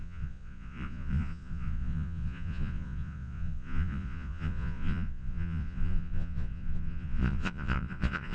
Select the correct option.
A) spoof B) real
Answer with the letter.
A